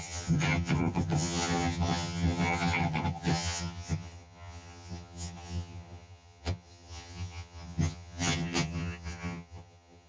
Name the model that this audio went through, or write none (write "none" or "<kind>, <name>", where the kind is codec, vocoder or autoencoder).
vocoder, HiFi-GAN